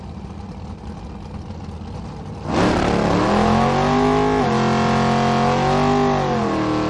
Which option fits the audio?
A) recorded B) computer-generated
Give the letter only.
A